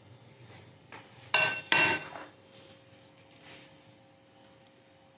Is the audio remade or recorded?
recorded